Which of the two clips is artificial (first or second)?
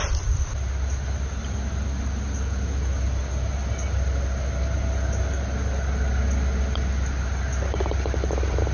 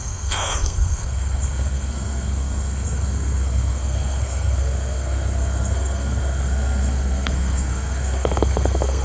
second